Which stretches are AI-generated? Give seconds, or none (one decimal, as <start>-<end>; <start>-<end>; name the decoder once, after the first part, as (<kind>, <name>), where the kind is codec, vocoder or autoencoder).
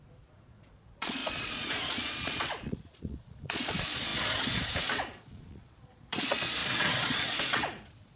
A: 0.0-8.2 (vocoder, Vocos)